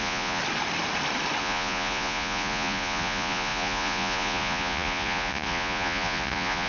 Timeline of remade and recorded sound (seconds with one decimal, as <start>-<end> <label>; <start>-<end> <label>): 0.0-0.4 remade; 0.4-1.4 recorded; 1.4-6.7 remade